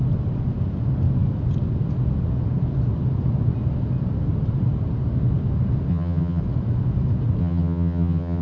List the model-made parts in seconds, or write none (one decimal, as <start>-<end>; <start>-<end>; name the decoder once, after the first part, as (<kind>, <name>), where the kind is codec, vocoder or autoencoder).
5.9-6.4 (vocoder, HiFi-GAN); 7.4-8.4